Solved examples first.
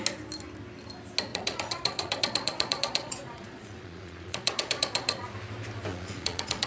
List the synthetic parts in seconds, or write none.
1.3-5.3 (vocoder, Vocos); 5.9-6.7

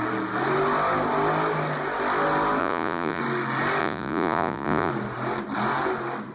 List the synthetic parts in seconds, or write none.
2.6-3.2 (vocoder, Vocos); 3.8-4.9

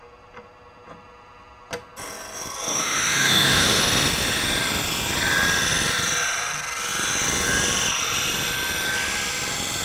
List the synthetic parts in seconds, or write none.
2.7-3.8 (autoencoder, DAC-VAE)

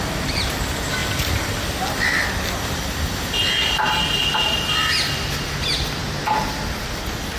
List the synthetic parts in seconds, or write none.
none

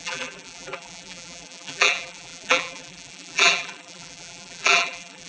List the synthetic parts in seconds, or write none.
0.0-5.3 (vocoder, BigVGAN v2)

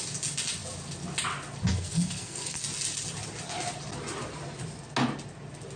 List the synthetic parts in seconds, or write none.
1.7-2.6 (codec, SNAC)

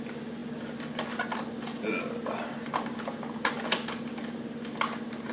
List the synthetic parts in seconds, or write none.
none